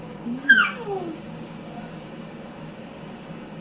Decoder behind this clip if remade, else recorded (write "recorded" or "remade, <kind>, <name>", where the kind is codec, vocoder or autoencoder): remade, codec, DAC